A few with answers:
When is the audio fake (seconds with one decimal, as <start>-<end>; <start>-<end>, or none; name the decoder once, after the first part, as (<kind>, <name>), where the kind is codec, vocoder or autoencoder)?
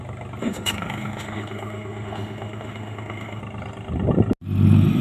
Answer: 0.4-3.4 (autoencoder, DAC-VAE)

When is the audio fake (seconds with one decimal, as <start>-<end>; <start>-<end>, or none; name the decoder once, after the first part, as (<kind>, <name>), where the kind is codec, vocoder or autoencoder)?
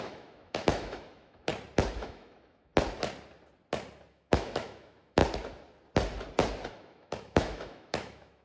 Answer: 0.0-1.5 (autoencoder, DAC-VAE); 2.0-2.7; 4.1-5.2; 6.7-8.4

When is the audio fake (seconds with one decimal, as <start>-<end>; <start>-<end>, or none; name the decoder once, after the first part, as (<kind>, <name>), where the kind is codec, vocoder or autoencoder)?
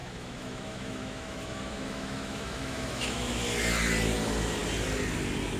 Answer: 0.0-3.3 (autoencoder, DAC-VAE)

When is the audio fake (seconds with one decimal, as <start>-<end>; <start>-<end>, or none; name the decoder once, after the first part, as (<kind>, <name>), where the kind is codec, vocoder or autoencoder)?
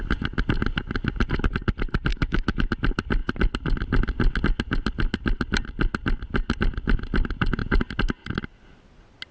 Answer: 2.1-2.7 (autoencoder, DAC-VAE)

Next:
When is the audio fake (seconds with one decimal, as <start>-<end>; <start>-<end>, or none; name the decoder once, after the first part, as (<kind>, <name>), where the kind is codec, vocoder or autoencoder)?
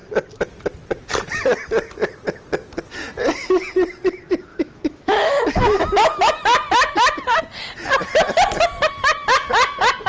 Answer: 4.5-5.3 (autoencoder, DAC-VAE)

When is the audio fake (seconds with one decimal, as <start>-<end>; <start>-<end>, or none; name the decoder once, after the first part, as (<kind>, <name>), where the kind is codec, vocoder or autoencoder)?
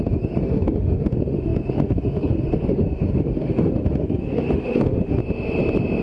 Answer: 0.0-5.2 (autoencoder, DAC-VAE)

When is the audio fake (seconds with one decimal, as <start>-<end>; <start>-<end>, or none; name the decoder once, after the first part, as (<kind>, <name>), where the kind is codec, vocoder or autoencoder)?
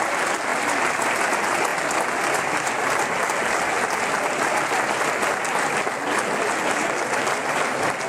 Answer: none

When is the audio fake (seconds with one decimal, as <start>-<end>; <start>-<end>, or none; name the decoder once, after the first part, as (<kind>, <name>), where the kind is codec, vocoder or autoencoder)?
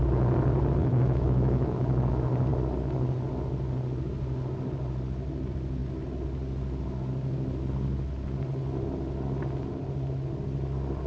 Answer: 0.8-2.1 (autoencoder, DAC-VAE)